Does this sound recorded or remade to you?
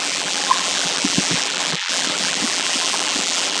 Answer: remade